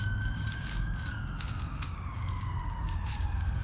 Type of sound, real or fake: fake